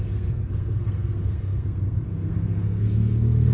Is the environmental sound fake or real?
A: fake